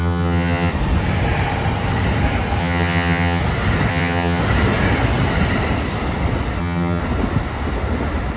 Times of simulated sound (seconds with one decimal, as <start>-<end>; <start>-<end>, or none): 0.0-0.7; 2.6-3.4; 3.9-4.4; 6.6-7.0